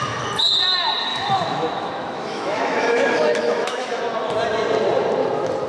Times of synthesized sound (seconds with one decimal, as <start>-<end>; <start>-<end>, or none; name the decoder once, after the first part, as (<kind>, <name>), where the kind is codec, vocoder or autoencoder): 1.1-4.0 (autoencoder, DAC-VAE)